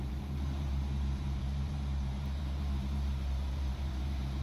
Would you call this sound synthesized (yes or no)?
yes